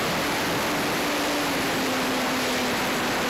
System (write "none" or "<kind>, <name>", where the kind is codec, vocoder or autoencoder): none